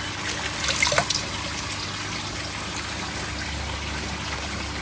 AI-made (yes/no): no